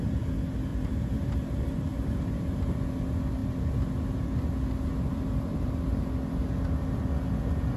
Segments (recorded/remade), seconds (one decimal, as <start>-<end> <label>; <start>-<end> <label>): 0.0-0.7 recorded; 0.7-2.6 remade; 2.6-5.5 recorded; 5.5-6.0 remade; 6.0-7.8 recorded